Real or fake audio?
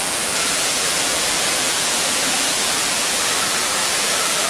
fake